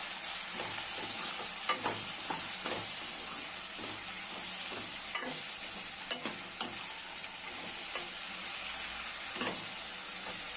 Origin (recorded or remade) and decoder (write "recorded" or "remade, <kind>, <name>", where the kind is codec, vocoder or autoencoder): recorded